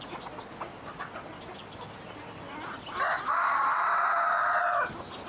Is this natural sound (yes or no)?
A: yes